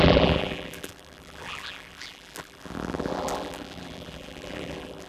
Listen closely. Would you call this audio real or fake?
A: fake